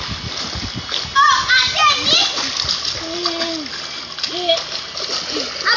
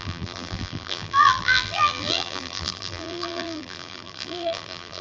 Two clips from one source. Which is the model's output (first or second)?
second